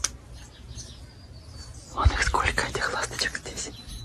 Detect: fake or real real